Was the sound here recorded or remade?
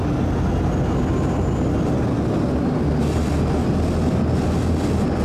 recorded